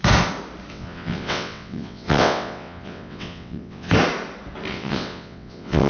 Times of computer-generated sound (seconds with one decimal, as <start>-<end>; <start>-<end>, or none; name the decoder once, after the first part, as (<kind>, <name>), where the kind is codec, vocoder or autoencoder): 0.7-3.9 (vocoder, WaveNeXt); 4.7-5.9